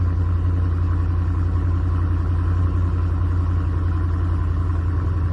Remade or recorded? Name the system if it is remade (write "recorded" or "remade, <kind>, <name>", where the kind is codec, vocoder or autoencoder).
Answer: recorded